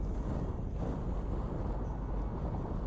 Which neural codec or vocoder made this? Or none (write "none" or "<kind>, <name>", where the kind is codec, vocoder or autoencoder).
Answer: none